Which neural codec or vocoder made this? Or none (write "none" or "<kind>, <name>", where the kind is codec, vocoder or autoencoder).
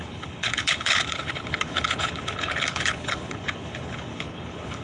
codec, HILCodec